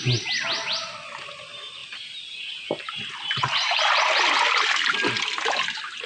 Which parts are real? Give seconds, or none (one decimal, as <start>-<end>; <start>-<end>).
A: 0.0-6.1